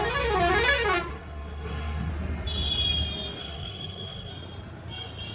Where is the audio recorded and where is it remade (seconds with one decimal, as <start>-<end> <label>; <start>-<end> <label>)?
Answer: 0.0-1.1 recorded; 1.1-2.1 remade; 2.1-3.4 recorded; 3.4-4.3 remade; 4.3-5.3 recorded

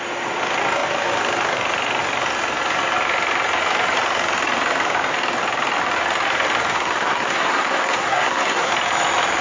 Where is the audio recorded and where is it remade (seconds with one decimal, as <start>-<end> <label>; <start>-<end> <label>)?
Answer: 0.0-6.7 recorded; 6.7-8.7 remade; 8.7-9.4 recorded